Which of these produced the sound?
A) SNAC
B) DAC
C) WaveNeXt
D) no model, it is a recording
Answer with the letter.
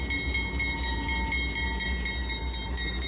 D